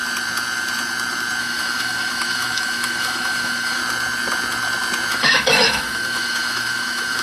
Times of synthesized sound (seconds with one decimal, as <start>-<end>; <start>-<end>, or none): 1.4-3.8; 5.1-7.2